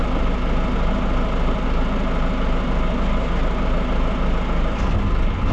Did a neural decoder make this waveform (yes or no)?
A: no